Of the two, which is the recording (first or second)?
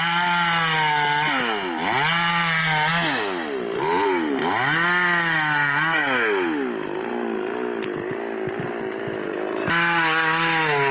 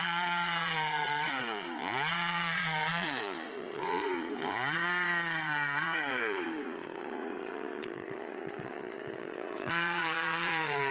first